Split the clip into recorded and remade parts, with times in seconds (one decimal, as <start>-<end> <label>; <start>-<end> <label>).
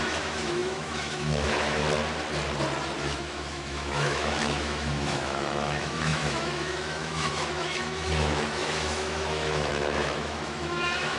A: 0.0-1.8 remade; 1.8-3.0 recorded; 3.0-11.2 remade